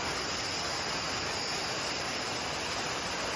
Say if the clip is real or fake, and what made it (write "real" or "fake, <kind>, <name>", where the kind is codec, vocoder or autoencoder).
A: real